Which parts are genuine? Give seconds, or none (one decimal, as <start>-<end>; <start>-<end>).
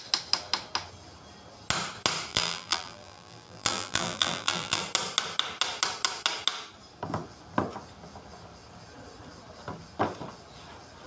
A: 0.0-2.3; 4.8-11.1